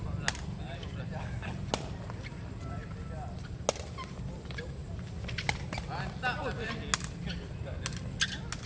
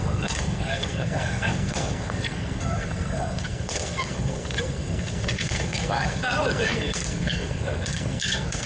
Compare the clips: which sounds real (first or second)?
first